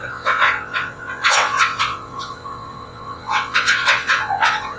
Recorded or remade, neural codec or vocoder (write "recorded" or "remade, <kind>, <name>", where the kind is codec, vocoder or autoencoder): remade, vocoder, WaveNeXt